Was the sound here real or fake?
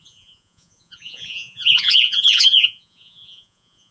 fake